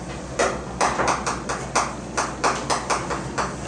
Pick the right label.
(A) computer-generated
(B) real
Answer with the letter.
B